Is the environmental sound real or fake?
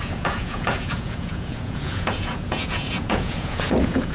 fake